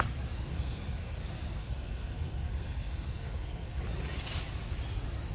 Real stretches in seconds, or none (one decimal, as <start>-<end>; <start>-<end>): 0.0-0.5; 1.2-1.6; 3.8-5.3